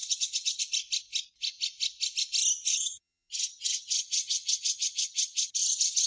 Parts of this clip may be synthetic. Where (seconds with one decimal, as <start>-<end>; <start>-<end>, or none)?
0.0-0.6; 2.7-6.1